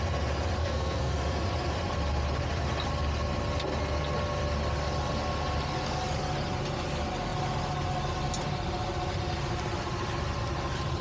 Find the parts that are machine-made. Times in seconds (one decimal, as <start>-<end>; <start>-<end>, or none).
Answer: 0.6-1.1